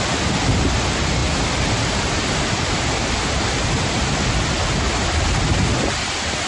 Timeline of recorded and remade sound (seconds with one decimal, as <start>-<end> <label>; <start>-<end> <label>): 0.0-6.5 recorded